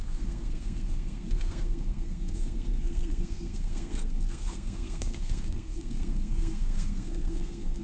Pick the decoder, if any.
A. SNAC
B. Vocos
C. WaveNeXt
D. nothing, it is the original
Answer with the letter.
A